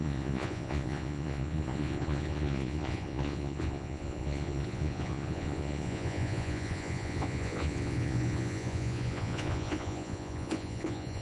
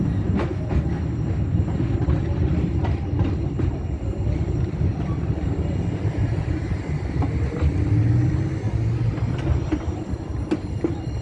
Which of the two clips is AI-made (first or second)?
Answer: first